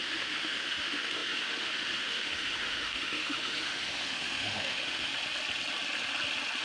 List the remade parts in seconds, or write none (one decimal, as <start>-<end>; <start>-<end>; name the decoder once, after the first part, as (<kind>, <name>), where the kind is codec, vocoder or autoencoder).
0.0-5.1 (autoencoder, DAC-VAE)

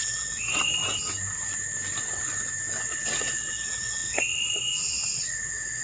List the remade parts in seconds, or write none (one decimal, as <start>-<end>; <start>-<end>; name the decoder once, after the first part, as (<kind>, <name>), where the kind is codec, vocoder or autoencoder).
0.0-0.8 (vocoder, WaveNeXt); 2.8-5.8